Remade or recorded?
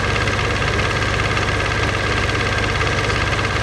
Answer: recorded